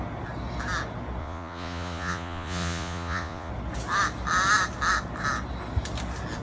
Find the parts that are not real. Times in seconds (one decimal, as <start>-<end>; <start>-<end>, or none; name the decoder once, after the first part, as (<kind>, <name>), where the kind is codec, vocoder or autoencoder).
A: 1.2-3.5 (vocoder, Vocos)